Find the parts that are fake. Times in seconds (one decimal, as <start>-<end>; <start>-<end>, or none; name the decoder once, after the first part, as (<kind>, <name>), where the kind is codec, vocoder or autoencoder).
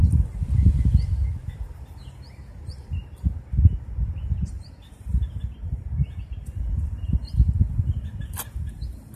none